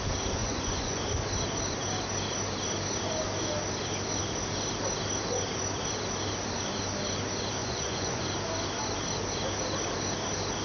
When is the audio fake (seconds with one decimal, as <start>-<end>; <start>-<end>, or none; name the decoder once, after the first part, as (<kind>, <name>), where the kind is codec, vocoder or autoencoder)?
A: 0.4-1.0 (vocoder, Vocos); 7.6-8.2